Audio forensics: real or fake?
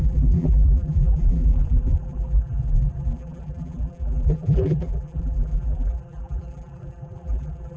fake